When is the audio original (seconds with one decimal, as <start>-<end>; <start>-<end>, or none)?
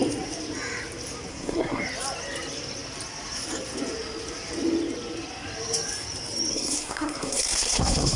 0.0-1.3; 1.8-6.5